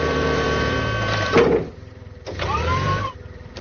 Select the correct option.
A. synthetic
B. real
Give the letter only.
A